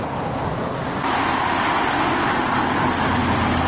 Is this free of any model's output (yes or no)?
yes